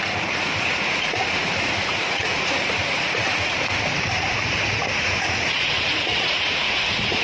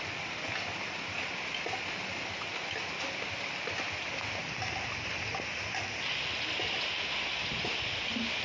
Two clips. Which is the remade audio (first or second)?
first